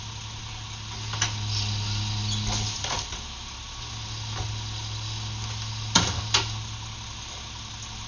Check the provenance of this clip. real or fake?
real